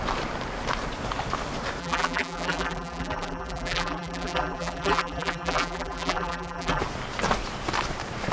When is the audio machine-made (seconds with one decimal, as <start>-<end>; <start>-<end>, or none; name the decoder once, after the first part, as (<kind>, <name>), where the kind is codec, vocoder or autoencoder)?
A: 1.8-6.8 (vocoder, BigVGAN v2)